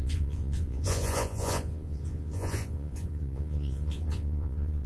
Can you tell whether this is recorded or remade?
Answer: remade